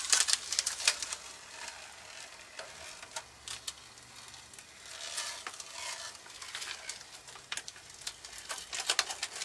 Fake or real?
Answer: real